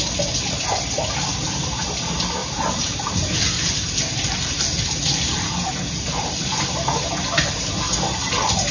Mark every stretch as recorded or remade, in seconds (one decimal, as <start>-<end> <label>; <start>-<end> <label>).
0.0-2.4 recorded; 2.4-7.1 remade; 7.1-8.7 recorded